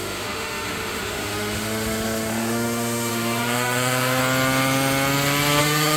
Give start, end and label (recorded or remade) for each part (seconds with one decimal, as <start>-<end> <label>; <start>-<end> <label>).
0.0-4.2 remade; 4.2-5.6 recorded; 5.6-6.0 remade